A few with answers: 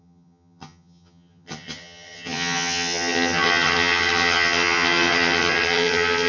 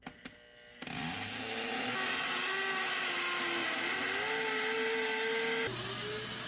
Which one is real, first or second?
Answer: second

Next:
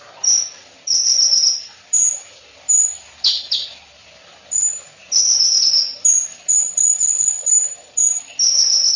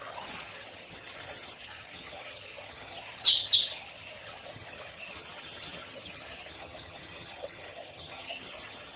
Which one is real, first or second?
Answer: first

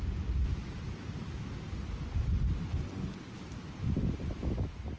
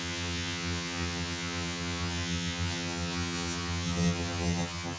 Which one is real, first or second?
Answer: first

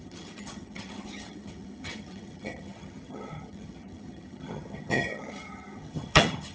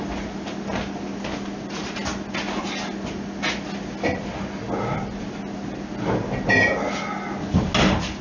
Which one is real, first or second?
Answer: second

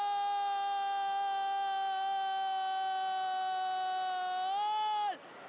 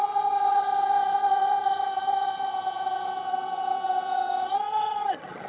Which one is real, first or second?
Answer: first